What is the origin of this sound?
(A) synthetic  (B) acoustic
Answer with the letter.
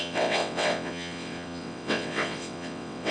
A